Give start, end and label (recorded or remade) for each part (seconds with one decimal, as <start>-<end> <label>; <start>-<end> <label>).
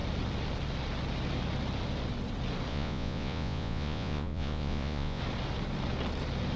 0.0-2.7 recorded; 2.7-5.2 remade; 5.2-6.6 recorded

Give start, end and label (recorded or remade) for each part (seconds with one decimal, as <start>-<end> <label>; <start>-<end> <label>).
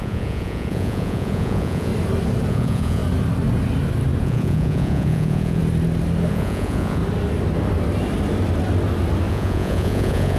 0.0-1.9 remade; 1.9-2.5 recorded; 2.5-3.0 remade; 3.0-4.2 recorded; 4.2-5.6 remade; 5.6-6.3 recorded; 6.3-7.0 remade; 7.0-9.3 recorded; 9.3-10.4 remade